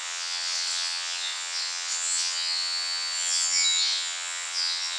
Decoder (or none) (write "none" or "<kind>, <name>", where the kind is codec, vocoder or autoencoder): vocoder, WaveNeXt